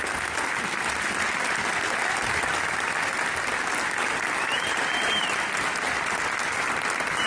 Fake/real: real